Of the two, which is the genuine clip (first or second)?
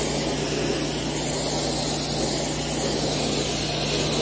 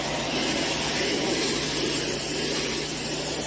first